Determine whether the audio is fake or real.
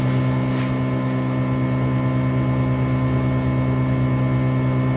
real